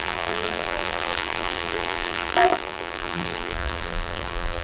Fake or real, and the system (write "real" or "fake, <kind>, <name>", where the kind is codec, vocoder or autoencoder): fake, vocoder, BigVGAN v2